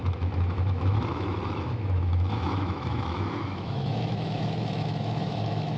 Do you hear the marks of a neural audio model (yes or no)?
yes